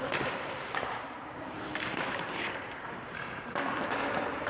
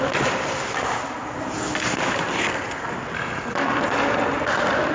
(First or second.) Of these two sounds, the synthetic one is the first